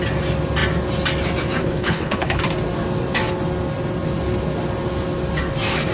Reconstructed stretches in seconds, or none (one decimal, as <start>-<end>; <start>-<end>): 1.6-2.4